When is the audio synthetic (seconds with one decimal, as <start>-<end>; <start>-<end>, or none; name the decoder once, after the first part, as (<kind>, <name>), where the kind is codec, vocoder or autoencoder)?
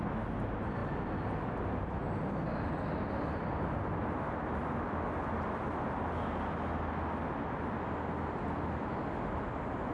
none